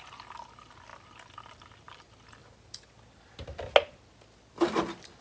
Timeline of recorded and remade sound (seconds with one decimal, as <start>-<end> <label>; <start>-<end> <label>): 0.0-5.2 recorded